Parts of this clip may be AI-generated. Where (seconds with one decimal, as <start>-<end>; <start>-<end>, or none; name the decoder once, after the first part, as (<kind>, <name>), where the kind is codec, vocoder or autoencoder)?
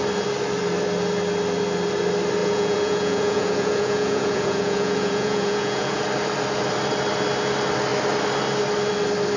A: 2.4-6.0 (vocoder, Vocos)